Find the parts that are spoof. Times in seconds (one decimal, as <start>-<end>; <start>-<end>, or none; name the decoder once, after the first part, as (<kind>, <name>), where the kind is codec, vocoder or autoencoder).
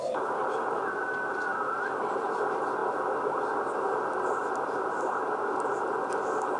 none